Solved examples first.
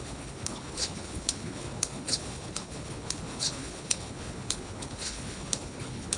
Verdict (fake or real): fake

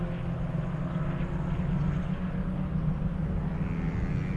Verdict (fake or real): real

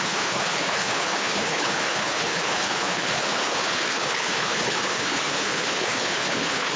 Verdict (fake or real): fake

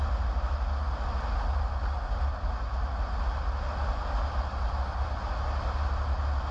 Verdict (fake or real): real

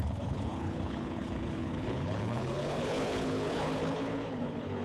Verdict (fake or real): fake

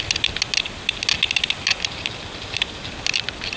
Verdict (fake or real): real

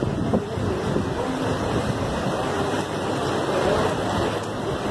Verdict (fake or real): real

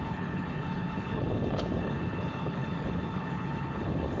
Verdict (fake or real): fake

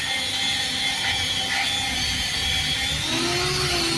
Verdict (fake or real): real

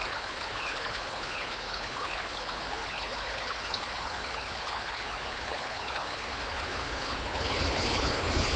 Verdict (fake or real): fake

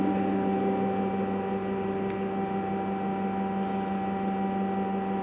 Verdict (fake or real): real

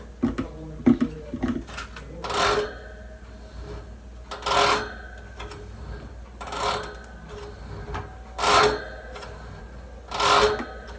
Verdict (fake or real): real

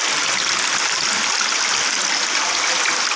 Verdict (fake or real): real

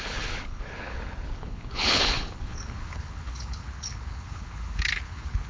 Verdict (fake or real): fake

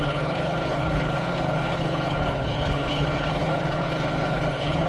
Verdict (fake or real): fake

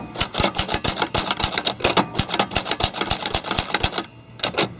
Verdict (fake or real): real